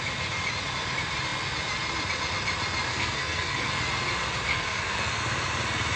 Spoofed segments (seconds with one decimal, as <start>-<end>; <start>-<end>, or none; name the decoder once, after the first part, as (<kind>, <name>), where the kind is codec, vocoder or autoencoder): 2.9-3.7 (codec, SNAC); 4.5-5.2